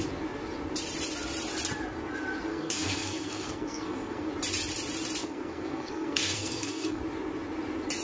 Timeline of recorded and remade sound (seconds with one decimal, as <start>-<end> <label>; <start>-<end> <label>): 0.0-2.5 recorded; 2.5-4.3 remade; 4.3-5.2 recorded; 5.2-7.0 remade; 7.0-8.0 recorded